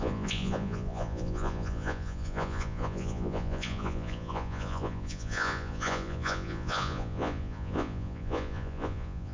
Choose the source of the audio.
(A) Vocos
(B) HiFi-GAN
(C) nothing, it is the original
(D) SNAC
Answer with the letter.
A